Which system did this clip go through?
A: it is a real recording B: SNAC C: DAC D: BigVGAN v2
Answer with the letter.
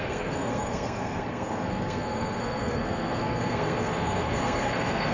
B